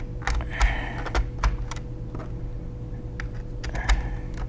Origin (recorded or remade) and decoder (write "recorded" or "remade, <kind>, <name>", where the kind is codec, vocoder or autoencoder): recorded